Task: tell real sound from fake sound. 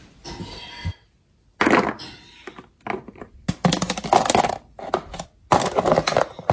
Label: real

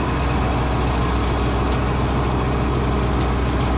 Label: real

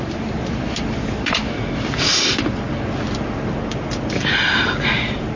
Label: real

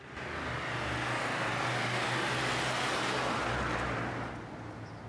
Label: real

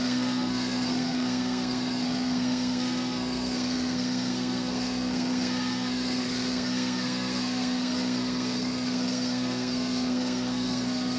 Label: fake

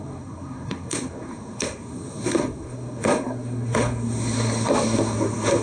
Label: fake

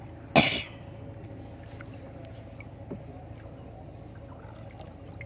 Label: real